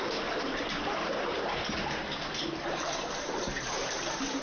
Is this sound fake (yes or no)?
yes